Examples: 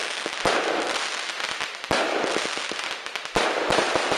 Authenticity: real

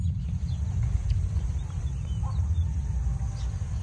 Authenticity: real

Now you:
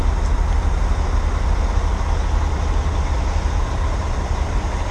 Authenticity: real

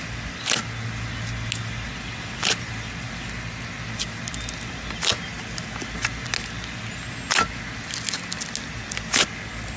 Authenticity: real